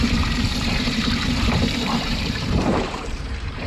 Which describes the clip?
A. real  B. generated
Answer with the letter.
B